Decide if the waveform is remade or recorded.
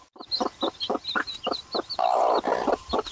recorded